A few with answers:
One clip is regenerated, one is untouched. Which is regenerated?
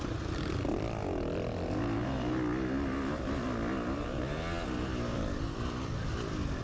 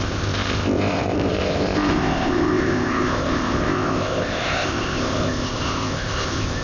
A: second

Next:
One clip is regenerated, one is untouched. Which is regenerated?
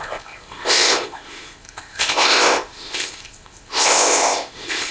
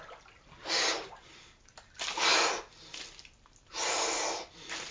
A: first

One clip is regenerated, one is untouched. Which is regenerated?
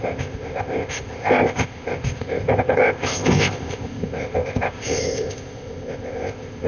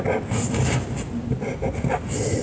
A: first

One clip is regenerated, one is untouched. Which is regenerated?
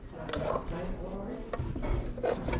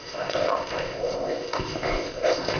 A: second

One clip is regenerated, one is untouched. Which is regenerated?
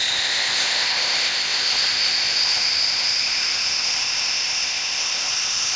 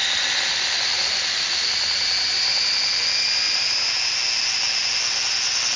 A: first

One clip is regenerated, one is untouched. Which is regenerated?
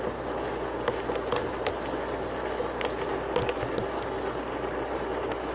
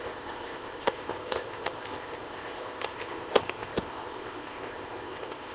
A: second